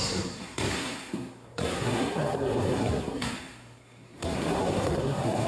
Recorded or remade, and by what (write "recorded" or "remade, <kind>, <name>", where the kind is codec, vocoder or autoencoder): remade, codec, SNAC